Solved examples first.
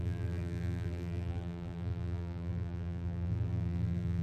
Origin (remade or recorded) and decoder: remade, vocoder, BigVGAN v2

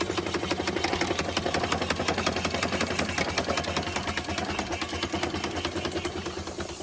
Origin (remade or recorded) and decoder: recorded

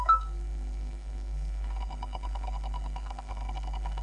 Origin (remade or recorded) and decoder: remade, codec, SNAC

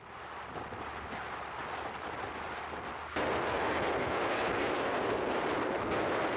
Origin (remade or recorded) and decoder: recorded